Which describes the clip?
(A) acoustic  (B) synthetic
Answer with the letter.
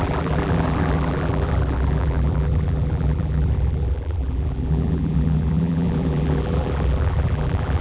B